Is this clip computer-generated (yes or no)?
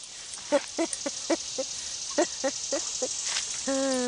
no